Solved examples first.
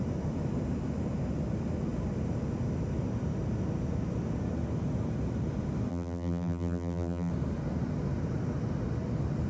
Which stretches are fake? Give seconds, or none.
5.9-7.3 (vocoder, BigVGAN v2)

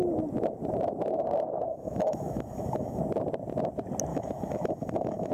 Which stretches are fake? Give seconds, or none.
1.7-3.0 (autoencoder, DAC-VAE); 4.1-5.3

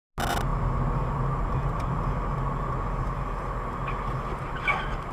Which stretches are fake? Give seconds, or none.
none